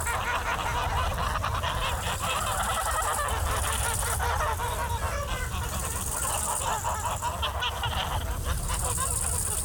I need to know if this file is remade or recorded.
recorded